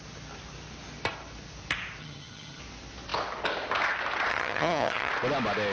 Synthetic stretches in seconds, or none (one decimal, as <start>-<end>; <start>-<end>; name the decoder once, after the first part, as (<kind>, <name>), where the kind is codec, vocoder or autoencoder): 2.0-2.6 (vocoder, HiFi-GAN); 4.3-5.1